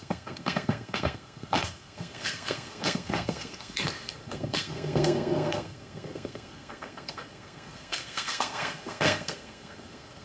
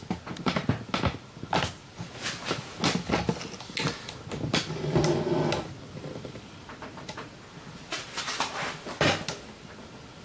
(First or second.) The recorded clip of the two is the second